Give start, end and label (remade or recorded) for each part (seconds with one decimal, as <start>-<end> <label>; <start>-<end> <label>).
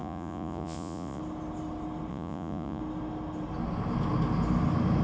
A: 0.0-1.2 remade; 1.2-2.1 recorded; 2.1-2.8 remade; 2.8-5.0 recorded